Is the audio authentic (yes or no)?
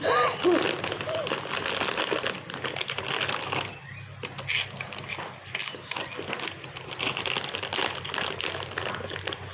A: yes